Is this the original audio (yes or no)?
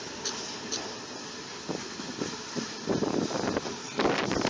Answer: yes